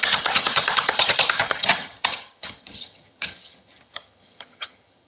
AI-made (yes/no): yes